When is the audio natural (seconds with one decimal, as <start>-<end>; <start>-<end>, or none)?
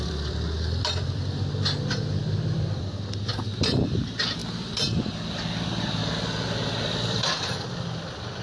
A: 1.2-2.2; 6.0-7.0